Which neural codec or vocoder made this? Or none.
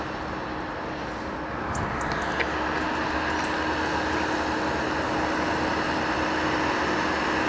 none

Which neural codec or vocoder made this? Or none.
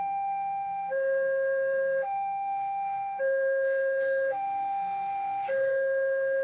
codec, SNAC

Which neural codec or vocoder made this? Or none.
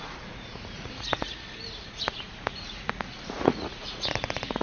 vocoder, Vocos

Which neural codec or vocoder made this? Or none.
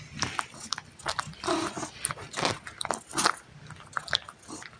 none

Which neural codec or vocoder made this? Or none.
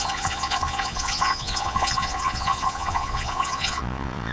vocoder, Vocos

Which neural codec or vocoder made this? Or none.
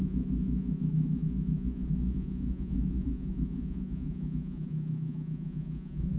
vocoder, Vocos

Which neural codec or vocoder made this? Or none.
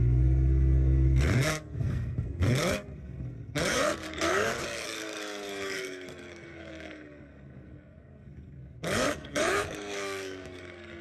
codec, SNAC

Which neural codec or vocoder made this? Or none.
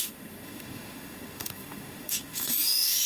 autoencoder, DAC-VAE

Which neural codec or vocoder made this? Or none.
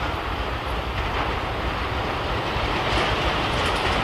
none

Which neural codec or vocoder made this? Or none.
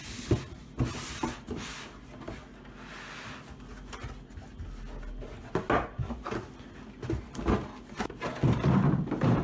none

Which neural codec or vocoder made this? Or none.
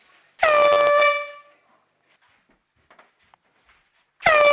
none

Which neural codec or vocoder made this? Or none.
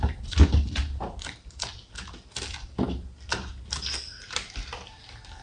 vocoder, BigVGAN v2